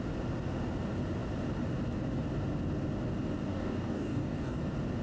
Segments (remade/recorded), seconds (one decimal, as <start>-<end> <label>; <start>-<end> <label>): 0.0-3.5 recorded; 3.5-4.6 remade; 4.6-5.0 recorded